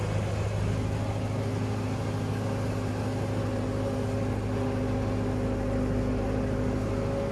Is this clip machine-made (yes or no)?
no